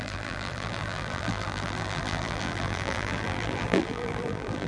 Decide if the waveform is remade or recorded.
remade